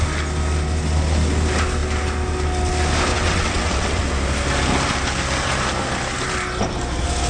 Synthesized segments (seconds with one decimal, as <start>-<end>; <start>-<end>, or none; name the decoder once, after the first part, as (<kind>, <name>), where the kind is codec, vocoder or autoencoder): 3.1-4.0 (vocoder, WaveNeXt)